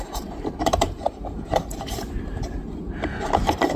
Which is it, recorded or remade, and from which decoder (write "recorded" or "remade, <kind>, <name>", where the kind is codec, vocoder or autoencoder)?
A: remade, vocoder, BigVGAN v2